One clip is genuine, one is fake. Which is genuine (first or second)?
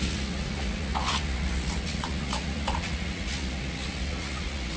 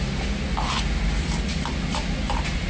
second